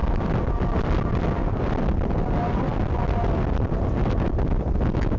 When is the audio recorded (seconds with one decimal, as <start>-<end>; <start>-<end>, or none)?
0.0-5.2